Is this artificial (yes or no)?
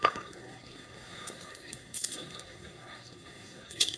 yes